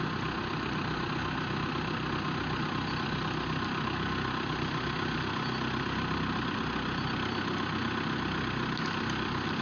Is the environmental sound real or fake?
real